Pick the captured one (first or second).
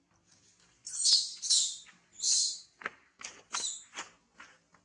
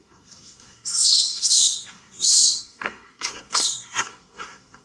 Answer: first